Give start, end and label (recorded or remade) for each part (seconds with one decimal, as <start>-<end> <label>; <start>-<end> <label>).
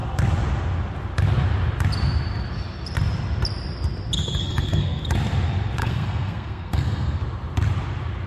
0.0-4.4 recorded; 4.4-5.0 remade; 5.0-5.8 recorded; 5.8-7.2 remade; 7.2-8.3 recorded